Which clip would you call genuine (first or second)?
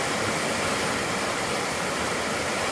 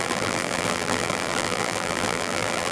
first